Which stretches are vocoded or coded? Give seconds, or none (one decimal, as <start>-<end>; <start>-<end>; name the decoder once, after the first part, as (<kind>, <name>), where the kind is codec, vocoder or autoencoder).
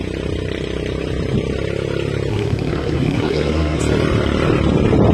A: 2.3-3.8 (codec, SNAC)